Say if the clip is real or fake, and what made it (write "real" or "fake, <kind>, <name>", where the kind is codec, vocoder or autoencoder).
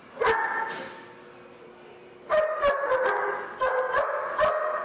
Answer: real